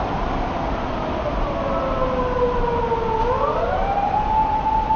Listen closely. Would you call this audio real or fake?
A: real